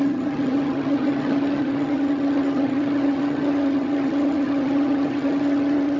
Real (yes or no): no